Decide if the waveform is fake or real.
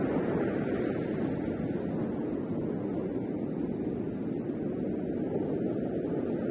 real